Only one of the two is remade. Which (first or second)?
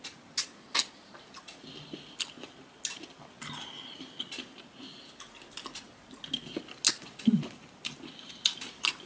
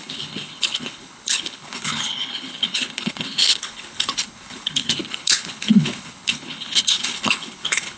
second